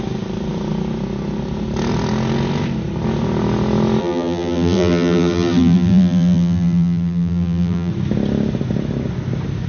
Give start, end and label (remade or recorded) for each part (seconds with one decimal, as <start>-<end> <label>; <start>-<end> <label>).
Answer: 0.0-4.0 recorded; 4.0-7.9 remade; 7.9-9.7 recorded